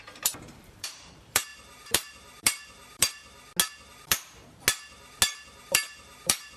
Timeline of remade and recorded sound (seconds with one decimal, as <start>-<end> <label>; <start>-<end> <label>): 0.0-3.2 remade; 3.2-3.9 recorded; 3.9-4.4 remade; 4.4-5.6 recorded; 5.6-6.6 remade